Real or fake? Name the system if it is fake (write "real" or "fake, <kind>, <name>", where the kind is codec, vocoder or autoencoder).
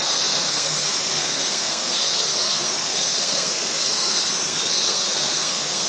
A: fake, codec, SNAC